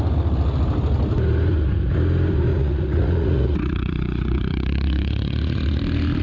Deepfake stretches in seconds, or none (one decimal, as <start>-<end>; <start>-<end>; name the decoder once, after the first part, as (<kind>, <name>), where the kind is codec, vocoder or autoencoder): 2.5-5.8 (vocoder, Vocos)